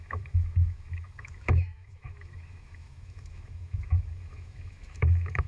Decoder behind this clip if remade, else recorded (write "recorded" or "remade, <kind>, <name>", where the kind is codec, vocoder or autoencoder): remade, autoencoder, DAC-VAE